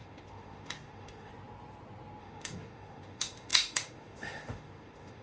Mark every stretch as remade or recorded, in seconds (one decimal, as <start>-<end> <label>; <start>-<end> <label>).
0.0-1.3 remade; 1.3-2.2 recorded; 2.2-5.2 remade